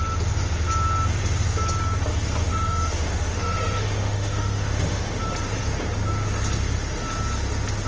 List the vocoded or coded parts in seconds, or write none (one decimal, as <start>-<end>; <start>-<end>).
2.4-5.2